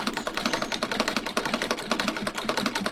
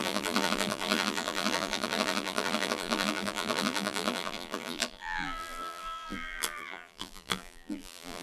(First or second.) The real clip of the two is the first